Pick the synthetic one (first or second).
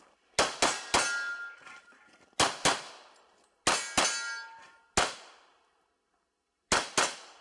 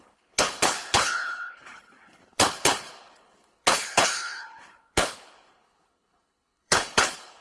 second